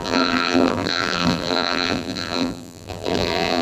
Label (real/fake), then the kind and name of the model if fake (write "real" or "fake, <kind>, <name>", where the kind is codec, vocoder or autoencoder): fake, vocoder, BigVGAN v2